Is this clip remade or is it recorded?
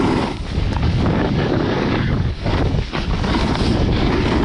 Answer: remade